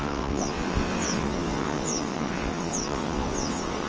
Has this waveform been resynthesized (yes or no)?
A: yes